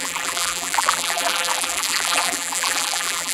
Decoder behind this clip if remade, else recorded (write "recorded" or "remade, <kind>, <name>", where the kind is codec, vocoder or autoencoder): remade, vocoder, BigVGAN v2